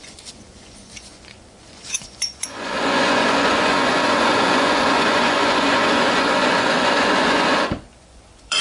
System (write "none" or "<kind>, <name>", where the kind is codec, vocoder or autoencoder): vocoder, Vocos